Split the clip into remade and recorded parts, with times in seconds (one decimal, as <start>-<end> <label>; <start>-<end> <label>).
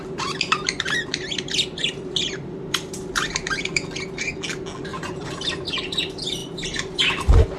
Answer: 0.0-4.9 recorded; 4.9-5.5 remade; 5.5-7.6 recorded